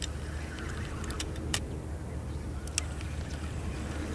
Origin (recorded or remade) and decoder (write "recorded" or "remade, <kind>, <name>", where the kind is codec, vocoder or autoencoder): recorded